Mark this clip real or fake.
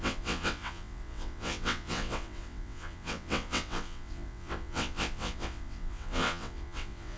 fake